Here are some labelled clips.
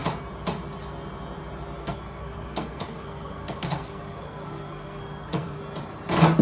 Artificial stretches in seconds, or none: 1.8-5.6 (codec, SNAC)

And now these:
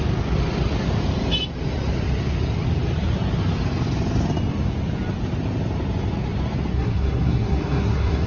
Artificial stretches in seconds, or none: 6.7-8.3 (codec, SNAC)

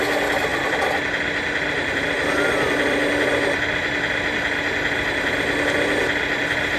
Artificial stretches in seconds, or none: none